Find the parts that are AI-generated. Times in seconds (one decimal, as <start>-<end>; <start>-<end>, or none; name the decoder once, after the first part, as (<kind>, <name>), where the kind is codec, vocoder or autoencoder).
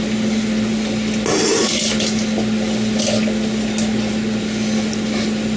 none